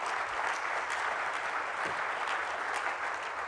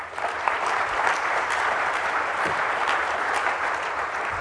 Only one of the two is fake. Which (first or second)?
second